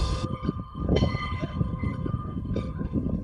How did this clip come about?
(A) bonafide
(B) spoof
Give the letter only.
B